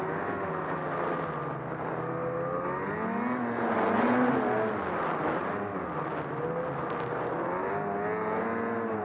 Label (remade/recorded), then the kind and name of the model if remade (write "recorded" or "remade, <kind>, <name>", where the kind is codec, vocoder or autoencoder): recorded